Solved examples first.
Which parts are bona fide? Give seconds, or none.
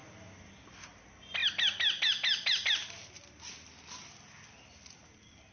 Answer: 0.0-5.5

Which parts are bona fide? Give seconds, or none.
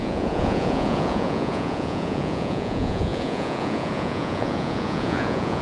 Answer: none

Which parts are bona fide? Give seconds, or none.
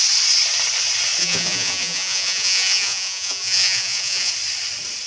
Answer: 0.0-1.2; 4.3-5.1